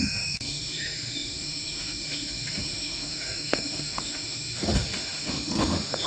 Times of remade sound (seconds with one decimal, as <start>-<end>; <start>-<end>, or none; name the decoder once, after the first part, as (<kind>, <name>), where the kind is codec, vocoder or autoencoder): 0.0-6.1 (autoencoder, DAC-VAE)